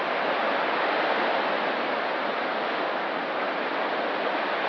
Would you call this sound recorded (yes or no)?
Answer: yes